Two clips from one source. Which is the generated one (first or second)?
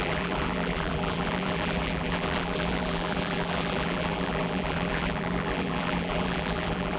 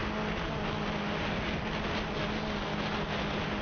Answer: first